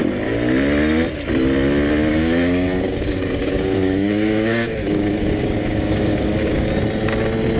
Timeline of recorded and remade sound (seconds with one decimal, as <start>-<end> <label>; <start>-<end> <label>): 0.0-2.1 recorded; 2.1-6.7 remade; 6.7-7.6 recorded